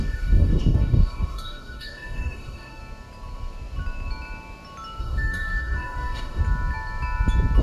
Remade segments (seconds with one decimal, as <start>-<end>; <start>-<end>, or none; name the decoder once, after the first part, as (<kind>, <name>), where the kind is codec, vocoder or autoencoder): 0.0-2.8 (codec, DAC); 5.0-6.4

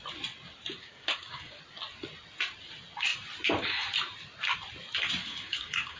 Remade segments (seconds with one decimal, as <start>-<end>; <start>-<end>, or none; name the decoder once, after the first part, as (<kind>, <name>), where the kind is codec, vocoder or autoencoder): 0.8-1.6 (codec, DAC); 5.2-6.0